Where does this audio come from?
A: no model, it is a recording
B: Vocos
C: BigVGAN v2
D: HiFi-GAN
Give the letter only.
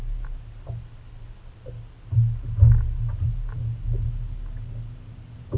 A